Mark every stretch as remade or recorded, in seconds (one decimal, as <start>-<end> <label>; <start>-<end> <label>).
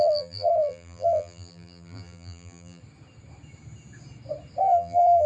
0.0-2.8 remade; 2.8-4.6 recorded; 4.6-5.3 remade